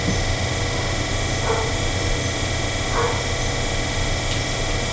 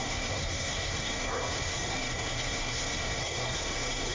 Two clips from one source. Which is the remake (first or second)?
second